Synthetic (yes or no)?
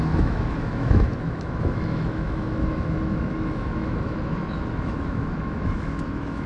yes